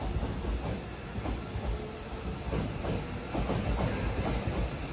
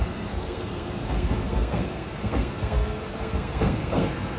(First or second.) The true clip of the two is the first